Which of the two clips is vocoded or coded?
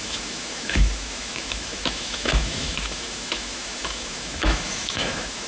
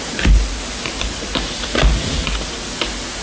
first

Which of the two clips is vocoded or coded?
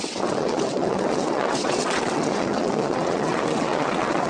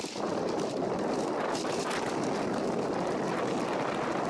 first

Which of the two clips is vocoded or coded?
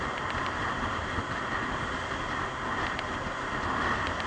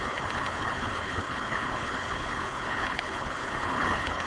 second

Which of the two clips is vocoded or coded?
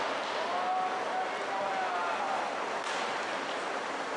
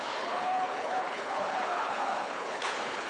second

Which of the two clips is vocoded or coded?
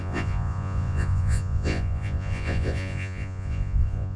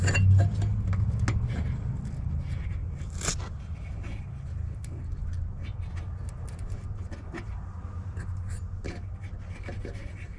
first